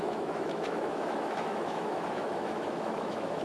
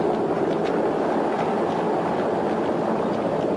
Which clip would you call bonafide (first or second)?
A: second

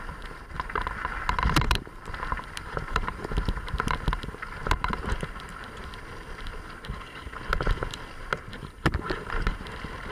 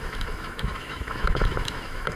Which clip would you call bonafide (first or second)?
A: first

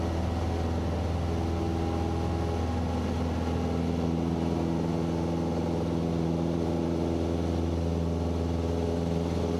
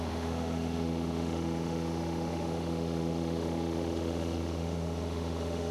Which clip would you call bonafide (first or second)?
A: first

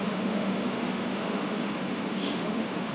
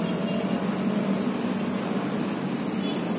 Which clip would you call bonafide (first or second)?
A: second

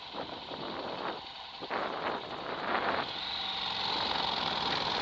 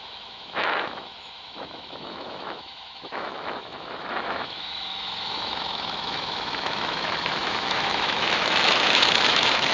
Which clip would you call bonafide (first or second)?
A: first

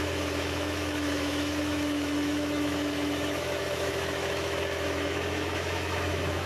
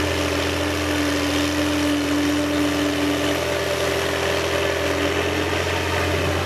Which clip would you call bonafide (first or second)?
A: second